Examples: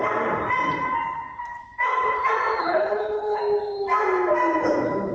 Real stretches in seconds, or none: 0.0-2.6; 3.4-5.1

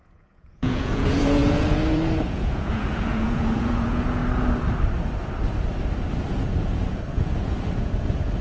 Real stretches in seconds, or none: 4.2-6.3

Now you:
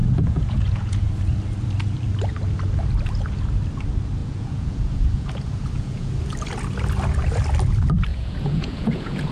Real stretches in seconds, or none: 1.1-4.2; 6.1-8.1

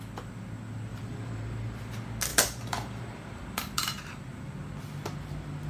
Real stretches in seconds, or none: 0.0-0.9; 1.4-2.3; 4.7-5.7

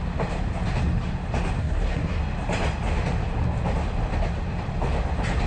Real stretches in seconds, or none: 0.0-1.6; 2.2-5.5

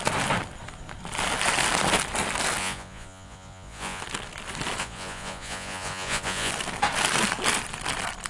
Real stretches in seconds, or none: 0.0-2.6; 4.0-4.8; 6.5-8.3

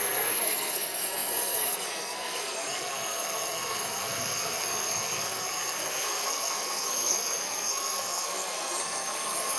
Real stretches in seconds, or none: none